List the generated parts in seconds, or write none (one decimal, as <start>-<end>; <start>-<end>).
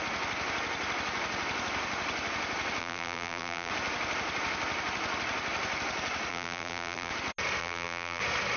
2.8-3.7; 6.3-7.1; 7.6-8.2